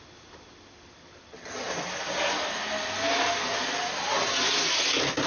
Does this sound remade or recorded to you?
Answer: recorded